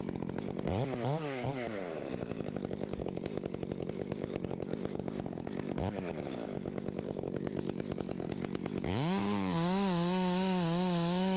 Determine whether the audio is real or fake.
fake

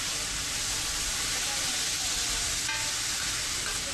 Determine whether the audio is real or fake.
real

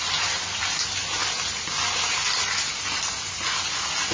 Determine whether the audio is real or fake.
real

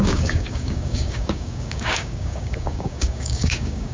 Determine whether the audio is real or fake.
fake